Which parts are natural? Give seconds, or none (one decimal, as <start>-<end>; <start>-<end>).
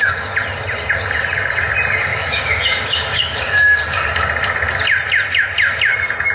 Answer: 0.0-2.1; 4.1-6.3